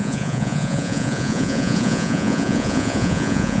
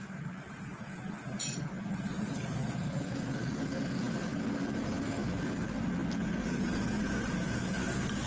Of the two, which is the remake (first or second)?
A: first